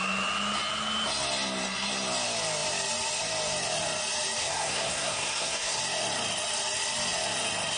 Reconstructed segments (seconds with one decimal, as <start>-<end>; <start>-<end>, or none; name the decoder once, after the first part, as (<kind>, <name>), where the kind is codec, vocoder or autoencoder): 4.4-5.8 (codec, SNAC)